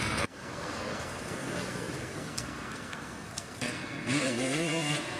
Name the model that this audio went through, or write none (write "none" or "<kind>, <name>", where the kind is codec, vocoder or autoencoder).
codec, SNAC